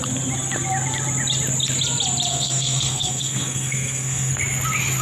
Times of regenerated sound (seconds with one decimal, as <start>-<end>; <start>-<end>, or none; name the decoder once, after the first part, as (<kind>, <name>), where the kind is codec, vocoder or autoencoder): 2.3-4.3 (codec, SNAC)